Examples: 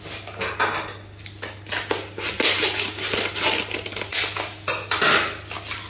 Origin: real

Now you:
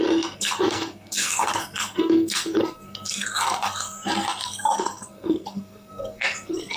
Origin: fake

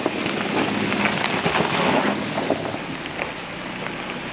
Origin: real